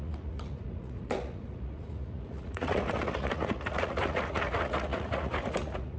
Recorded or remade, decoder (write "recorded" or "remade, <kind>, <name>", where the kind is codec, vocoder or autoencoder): remade, vocoder, Vocos